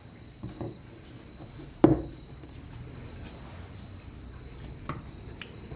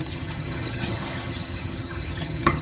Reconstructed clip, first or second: second